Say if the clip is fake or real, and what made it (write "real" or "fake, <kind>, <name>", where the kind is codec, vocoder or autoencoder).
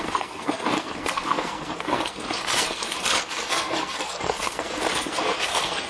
fake, codec, SNAC